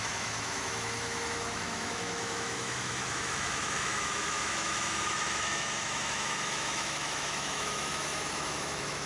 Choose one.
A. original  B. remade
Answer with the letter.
B